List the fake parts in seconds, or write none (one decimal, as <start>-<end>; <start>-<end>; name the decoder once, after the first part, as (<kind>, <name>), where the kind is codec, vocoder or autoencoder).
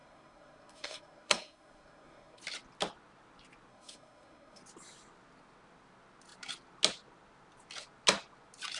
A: 0.0-2.4 (codec, SNAC); 3.7-4.6